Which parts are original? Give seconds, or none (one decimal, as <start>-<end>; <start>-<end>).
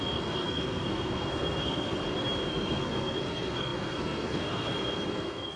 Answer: 2.0-2.5